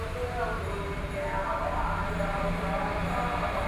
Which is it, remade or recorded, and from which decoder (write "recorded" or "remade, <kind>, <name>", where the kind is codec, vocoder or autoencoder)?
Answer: recorded